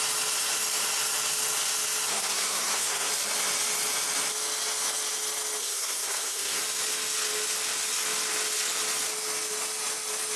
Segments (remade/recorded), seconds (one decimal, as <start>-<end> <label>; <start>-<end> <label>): 0.0-2.1 recorded; 2.1-3.1 remade; 3.1-5.6 recorded; 5.6-6.6 remade; 6.6-10.4 recorded